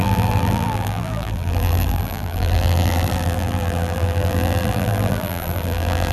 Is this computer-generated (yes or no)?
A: yes